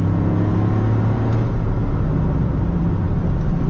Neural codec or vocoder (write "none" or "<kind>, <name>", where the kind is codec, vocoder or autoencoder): none